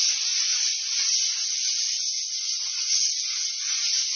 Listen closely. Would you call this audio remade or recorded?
recorded